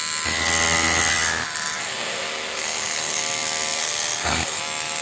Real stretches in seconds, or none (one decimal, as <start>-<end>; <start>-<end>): 0.0-1.8; 3.2-3.8; 4.6-5.0